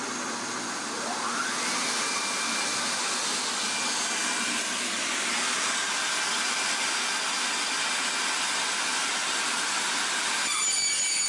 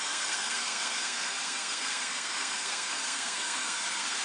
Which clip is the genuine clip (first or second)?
first